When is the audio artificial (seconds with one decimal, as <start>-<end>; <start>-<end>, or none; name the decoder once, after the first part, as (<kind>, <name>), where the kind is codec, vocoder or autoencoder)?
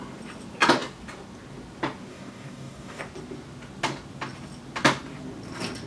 2.1-3.0 (codec, DAC)